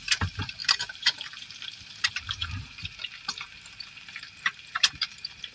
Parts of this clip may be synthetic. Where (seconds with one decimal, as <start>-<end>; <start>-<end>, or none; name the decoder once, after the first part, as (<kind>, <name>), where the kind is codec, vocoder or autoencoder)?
0.0-5.5 (vocoder, BigVGAN v2)

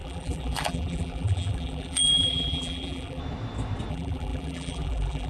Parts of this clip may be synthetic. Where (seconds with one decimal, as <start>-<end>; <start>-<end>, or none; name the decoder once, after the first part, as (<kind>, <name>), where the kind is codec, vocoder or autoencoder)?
0.0-3.2 (vocoder, BigVGAN v2); 3.9-5.3

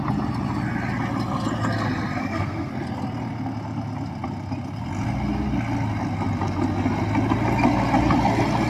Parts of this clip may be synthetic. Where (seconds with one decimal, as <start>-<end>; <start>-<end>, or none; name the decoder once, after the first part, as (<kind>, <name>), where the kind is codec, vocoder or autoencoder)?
2.2-2.7 (codec, SNAC)

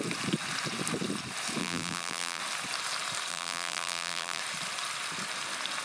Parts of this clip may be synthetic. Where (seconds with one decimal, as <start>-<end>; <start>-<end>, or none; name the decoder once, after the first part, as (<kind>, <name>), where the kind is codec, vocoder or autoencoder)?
1.6-2.4 (vocoder, BigVGAN v2); 3.3-4.4

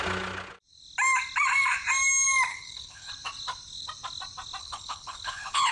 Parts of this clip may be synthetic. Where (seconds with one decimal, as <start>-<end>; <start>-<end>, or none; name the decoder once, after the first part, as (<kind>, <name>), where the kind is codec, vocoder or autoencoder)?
2.5-3.1 (codec, HILCodec); 4.6-5.7

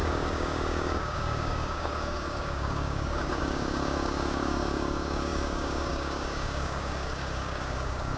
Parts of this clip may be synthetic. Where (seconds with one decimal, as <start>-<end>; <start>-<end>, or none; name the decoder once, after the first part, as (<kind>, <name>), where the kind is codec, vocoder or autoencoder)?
0.0-8.2 (codec, DAC)